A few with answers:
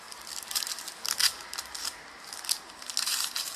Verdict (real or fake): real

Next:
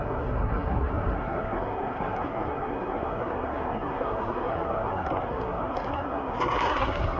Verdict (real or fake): fake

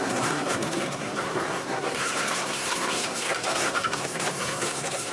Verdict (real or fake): fake